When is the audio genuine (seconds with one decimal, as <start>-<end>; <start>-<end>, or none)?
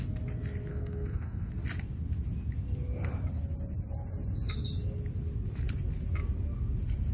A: 0.0-0.7; 1.5-7.1